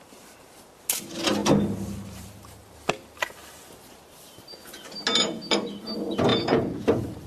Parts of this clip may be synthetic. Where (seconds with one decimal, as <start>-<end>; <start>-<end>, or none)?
6.3-6.8